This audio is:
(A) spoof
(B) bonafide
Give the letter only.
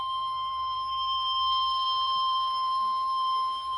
A